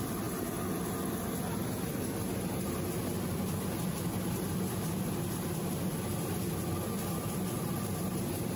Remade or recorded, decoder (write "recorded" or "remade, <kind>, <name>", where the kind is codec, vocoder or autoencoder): recorded